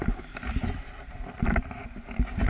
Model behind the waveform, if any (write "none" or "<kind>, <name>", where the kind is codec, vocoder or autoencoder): none